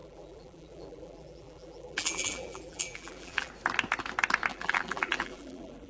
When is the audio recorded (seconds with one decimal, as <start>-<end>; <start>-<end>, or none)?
3.5-4.5